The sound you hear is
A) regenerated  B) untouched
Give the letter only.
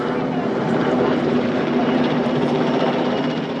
A